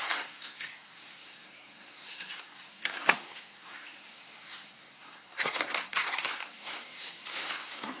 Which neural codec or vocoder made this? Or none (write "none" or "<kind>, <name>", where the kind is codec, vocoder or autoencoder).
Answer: codec, SNAC